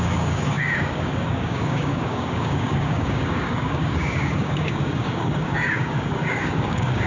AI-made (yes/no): yes